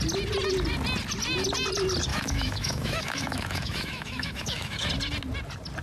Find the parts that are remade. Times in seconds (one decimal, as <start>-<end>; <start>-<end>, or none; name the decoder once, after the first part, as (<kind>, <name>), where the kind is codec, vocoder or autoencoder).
2.1-4.9 (autoencoder, DAC-VAE)